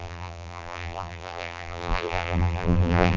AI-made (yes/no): yes